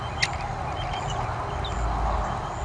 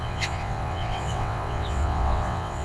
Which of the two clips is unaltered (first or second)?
first